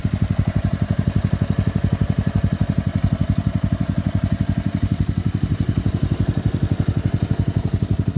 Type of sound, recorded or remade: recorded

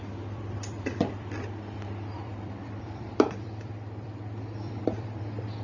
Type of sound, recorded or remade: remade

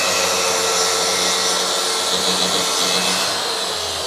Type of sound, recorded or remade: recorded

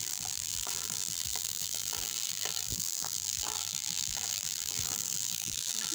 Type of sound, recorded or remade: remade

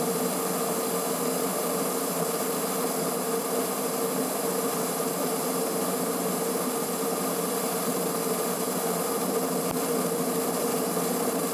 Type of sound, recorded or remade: recorded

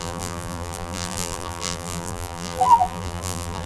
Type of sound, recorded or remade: remade